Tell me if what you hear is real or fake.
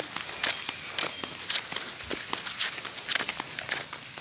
real